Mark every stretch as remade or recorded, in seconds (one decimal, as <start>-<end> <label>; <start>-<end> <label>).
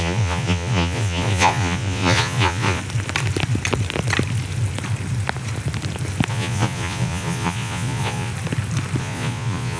0.0-2.8 remade; 2.8-6.3 recorded; 6.3-8.3 remade; 8.3-9.0 recorded; 9.0-9.8 remade